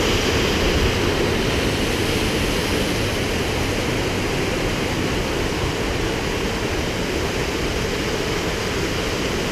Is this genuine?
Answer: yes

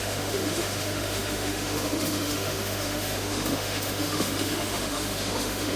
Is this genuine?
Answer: no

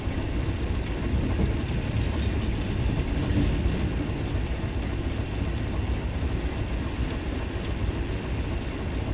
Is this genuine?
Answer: yes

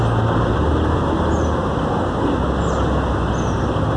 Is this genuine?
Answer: yes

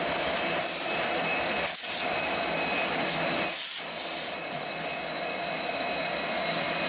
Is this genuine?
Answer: yes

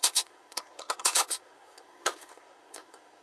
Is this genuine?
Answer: no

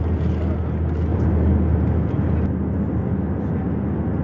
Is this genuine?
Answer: yes